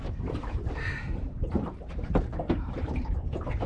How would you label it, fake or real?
fake